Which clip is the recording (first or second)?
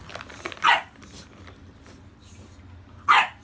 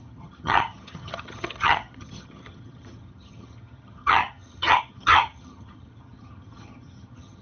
first